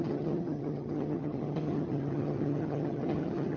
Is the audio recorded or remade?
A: remade